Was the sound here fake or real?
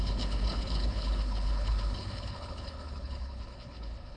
fake